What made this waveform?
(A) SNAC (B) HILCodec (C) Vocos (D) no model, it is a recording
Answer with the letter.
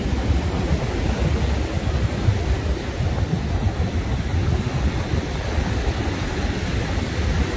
D